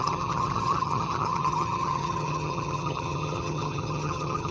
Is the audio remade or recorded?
remade